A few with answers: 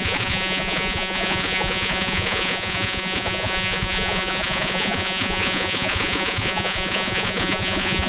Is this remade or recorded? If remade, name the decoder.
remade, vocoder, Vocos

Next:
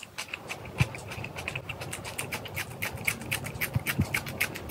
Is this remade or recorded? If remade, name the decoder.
recorded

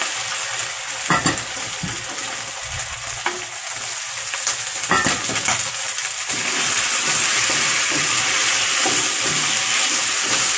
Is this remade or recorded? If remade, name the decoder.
recorded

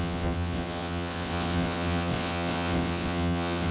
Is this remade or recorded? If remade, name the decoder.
remade, vocoder, WaveNeXt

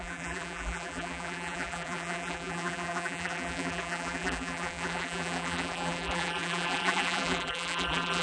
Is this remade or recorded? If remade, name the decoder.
remade, vocoder, BigVGAN v2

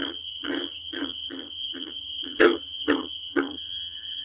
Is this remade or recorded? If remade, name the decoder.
remade, vocoder, HiFi-GAN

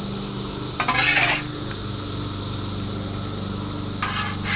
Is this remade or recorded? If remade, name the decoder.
recorded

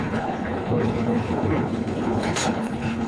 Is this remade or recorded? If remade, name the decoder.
remade, codec, HILCodec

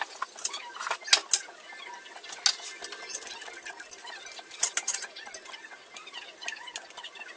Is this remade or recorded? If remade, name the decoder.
recorded